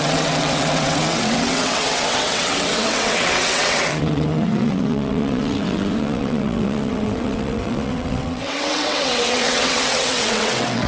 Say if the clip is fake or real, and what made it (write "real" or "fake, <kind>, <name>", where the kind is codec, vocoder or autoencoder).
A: fake, vocoder, WaveNeXt